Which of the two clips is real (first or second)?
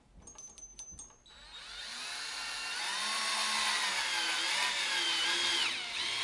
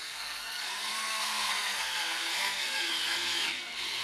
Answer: first